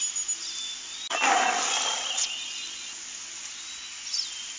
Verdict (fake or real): real